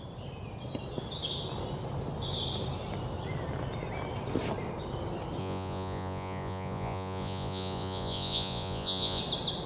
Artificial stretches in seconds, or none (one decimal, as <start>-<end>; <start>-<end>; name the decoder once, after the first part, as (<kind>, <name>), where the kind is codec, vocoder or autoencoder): 5.4-9.2 (vocoder, Vocos)